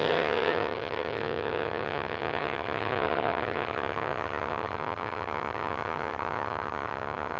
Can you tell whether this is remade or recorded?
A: remade